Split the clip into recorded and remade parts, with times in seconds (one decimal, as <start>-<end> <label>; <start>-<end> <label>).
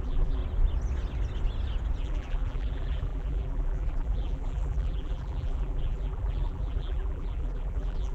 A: 0.0-0.4 remade; 0.4-2.0 recorded; 2.0-8.1 remade